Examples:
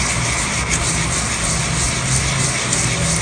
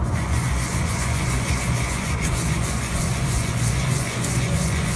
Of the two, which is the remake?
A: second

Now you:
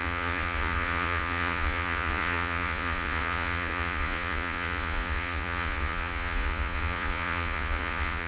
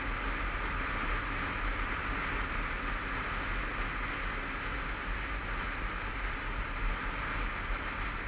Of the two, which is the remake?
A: first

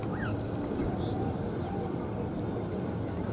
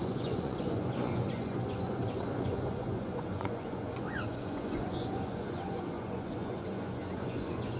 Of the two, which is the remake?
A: second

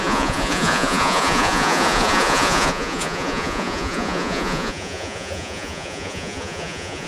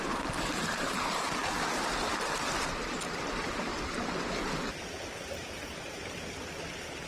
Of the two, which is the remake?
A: first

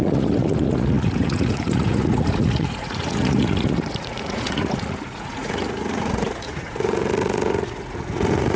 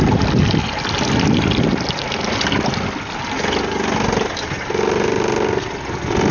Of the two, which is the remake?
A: first